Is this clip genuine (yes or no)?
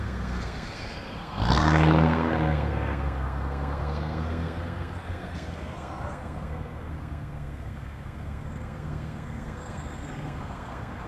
no